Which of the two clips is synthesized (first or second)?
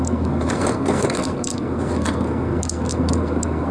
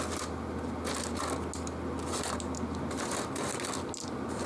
first